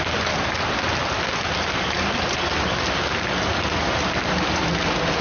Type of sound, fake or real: real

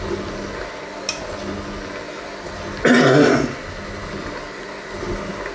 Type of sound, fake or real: real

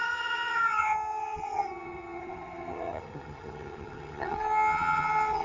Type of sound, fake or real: fake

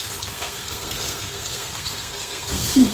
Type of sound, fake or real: fake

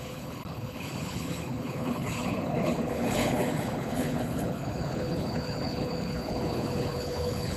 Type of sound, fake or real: fake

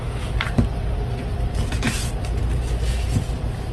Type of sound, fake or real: real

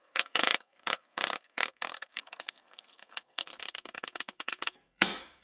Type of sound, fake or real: fake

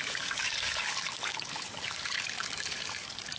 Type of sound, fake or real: fake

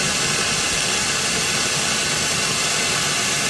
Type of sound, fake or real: real